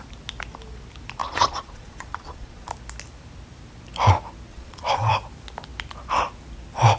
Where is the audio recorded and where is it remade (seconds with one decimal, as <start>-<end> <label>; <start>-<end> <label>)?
0.0-1.2 recorded; 1.2-2.7 remade; 2.7-4.5 recorded; 4.5-5.1 remade; 5.1-7.0 recorded